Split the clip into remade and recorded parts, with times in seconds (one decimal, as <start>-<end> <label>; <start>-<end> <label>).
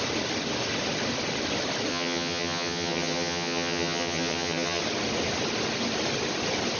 0.0-1.9 recorded; 1.9-4.8 remade; 4.8-6.8 recorded